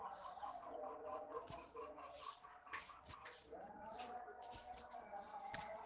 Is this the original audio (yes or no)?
no